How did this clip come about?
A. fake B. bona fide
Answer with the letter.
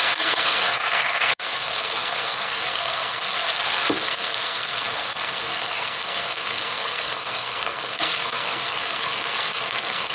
A